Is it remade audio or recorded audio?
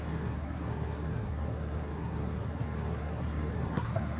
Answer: remade